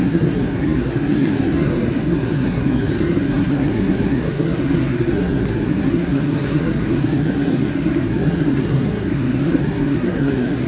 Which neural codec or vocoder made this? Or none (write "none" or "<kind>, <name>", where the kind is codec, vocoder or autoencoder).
codec, SNAC